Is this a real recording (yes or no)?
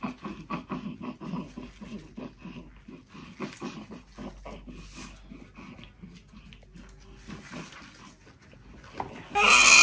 yes